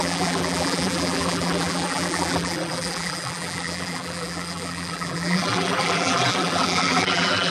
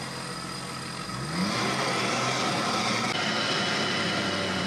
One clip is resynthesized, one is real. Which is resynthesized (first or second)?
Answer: first